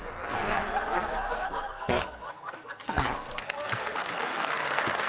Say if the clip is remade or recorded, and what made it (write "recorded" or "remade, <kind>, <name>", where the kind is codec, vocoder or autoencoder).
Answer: remade, codec, SNAC